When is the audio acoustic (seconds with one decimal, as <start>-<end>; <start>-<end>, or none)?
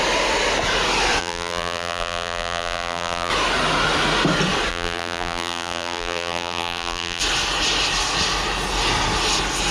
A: 0.0-1.2; 3.3-4.7; 7.2-9.7